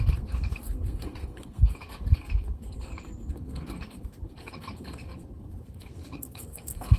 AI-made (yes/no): yes